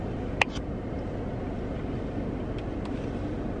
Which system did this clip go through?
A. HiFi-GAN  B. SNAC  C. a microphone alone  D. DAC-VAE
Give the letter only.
C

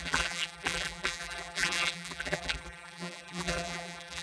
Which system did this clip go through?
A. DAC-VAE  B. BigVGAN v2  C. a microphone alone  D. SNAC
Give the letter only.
B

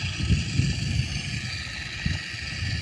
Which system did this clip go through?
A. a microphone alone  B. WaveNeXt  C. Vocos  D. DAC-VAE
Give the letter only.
A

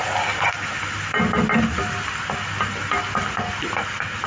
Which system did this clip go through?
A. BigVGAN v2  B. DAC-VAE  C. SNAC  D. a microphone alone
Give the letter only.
D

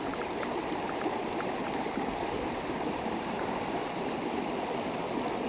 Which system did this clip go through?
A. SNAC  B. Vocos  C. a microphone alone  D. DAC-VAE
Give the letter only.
C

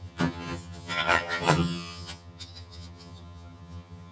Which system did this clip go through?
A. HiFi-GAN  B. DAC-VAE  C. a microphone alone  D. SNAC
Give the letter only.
A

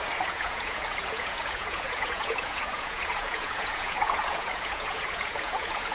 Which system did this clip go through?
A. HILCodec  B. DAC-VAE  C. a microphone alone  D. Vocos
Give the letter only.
D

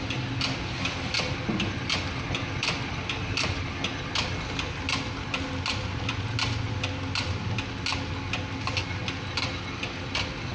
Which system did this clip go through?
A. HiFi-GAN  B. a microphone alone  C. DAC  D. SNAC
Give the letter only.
B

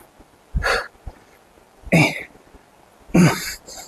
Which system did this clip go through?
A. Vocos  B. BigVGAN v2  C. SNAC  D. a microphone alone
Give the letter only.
B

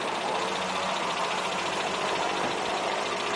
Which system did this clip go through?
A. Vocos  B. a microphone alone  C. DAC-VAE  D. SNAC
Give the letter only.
B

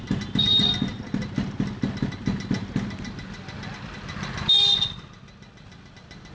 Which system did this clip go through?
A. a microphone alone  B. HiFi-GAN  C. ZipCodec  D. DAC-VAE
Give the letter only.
A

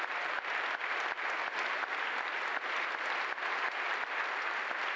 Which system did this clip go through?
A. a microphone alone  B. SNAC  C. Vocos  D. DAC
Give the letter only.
A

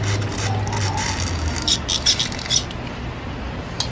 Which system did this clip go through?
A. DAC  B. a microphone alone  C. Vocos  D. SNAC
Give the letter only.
B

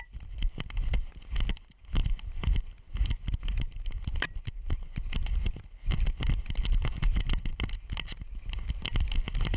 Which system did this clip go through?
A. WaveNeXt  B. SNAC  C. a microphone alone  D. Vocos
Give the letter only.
C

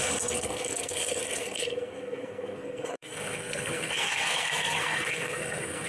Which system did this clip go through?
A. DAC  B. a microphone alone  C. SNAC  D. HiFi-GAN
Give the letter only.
C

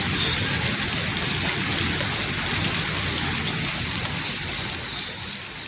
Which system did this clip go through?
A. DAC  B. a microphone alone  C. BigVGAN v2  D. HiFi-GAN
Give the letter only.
B